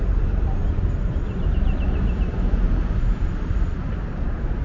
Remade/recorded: recorded